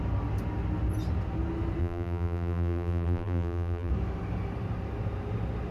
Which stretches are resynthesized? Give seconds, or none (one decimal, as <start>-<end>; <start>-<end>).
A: 1.8-3.9